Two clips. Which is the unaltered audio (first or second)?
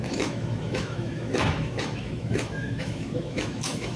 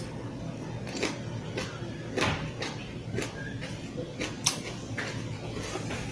second